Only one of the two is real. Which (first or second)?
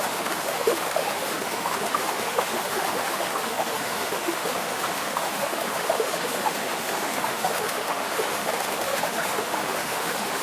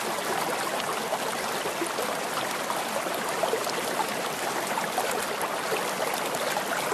second